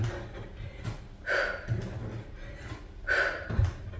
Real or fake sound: real